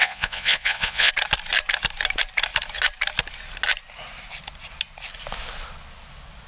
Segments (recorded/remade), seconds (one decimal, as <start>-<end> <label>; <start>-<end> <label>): 0.0-1.1 remade; 1.1-6.5 recorded